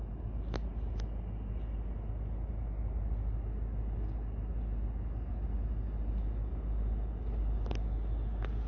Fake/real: real